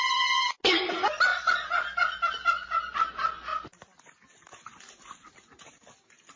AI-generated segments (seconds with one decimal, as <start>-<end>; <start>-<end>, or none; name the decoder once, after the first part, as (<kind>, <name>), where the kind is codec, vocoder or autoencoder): none